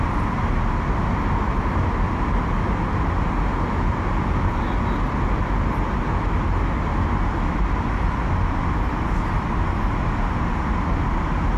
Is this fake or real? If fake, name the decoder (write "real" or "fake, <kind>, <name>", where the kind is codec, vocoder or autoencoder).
real